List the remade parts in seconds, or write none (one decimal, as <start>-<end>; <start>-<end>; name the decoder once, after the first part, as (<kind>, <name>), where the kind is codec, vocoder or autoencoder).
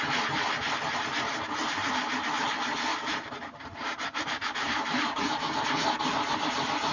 2.9-5.2 (vocoder, BigVGAN v2)